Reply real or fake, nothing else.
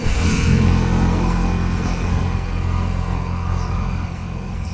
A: fake